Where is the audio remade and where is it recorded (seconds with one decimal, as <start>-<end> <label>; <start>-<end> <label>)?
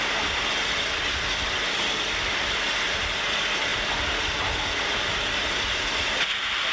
0.0-6.7 recorded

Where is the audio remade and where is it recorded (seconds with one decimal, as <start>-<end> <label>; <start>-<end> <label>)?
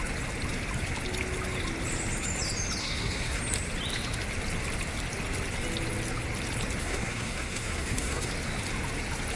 0.0-2.8 recorded; 2.8-3.4 remade; 3.4-6.8 recorded; 6.8-8.3 remade; 8.3-9.4 recorded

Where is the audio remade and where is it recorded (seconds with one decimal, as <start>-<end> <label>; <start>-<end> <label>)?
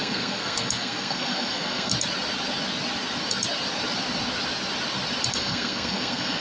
0.0-1.9 remade; 1.9-5.3 recorded; 5.3-6.4 remade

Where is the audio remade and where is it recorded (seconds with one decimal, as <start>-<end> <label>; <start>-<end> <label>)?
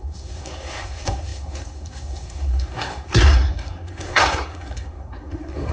0.0-5.7 remade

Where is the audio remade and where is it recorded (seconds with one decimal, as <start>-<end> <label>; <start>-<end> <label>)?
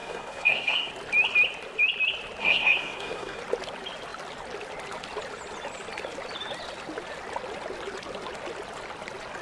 0.0-0.9 remade; 0.9-2.4 recorded; 2.4-3.4 remade; 3.4-9.4 recorded